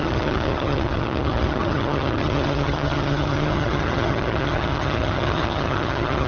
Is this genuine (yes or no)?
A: no